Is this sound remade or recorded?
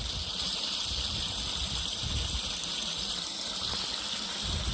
recorded